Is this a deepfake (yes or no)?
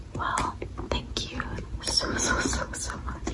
no